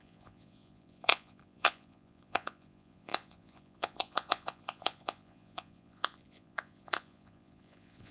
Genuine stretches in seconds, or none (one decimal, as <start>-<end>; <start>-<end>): none